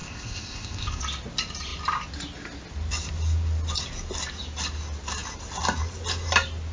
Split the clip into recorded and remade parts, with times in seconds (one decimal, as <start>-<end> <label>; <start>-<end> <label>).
0.0-1.0 remade; 1.0-6.7 recorded